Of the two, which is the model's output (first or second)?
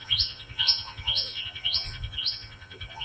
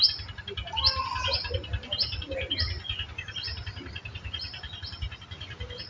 first